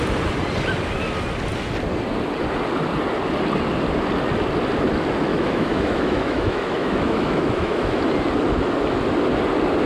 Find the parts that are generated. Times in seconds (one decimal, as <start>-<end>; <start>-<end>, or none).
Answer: 5.3-8.0

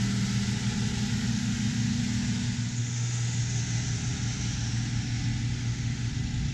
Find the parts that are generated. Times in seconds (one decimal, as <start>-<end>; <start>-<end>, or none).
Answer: 1.3-2.0; 2.8-3.4; 5.5-6.1